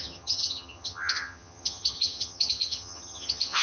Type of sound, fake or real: fake